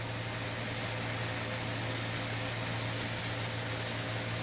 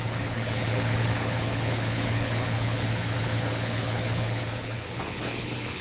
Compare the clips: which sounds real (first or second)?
first